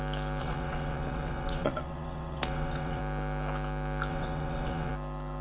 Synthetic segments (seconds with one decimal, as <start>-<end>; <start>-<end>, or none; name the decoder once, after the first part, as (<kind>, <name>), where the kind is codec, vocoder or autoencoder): 0.4-3.0 (vocoder, WaveNeXt); 4.1-4.9